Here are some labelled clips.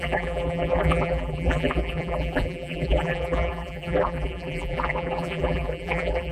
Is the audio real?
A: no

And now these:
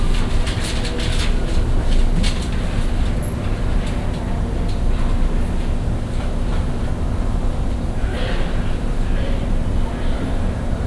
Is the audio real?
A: yes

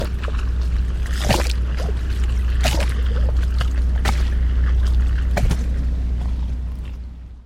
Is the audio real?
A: yes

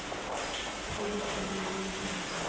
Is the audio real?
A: yes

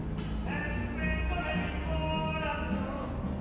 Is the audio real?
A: yes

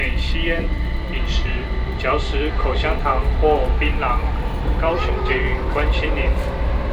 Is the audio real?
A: no